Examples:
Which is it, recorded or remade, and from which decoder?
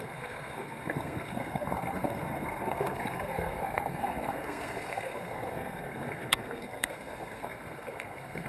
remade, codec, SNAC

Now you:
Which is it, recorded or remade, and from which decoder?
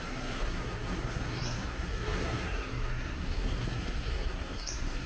remade, codec, SNAC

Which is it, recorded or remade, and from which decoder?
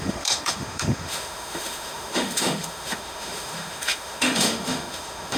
remade, autoencoder, DAC-VAE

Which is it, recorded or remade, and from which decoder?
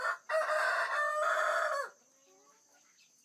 recorded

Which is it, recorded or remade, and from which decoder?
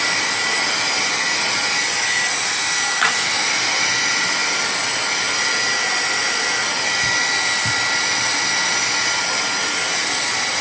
recorded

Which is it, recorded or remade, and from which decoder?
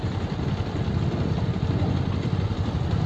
recorded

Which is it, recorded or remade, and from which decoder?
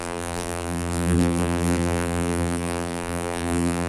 remade, vocoder, BigVGAN v2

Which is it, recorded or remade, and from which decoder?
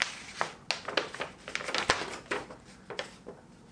recorded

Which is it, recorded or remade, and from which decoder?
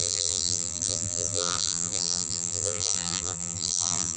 remade, vocoder, BigVGAN v2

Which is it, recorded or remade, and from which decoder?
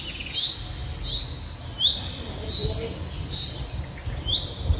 recorded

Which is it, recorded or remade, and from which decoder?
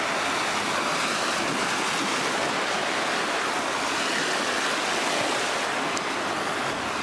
recorded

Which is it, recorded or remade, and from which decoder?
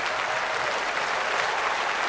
recorded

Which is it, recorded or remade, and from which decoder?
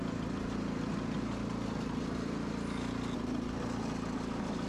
recorded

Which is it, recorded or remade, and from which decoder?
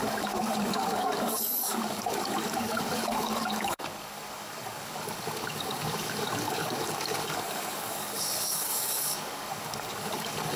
remade, codec, DAC